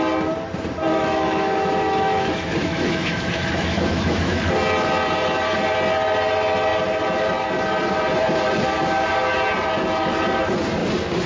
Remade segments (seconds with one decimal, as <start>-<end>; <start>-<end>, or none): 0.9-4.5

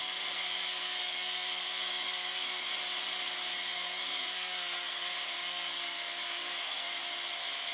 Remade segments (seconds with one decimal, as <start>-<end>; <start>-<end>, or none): 0.0-2.7; 3.5-6.9

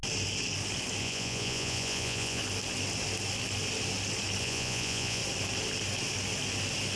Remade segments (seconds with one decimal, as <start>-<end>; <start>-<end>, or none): 1.0-2.4; 4.4-5.2